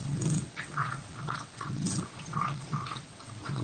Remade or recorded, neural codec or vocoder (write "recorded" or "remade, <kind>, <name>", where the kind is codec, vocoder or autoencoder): remade, vocoder, WaveNeXt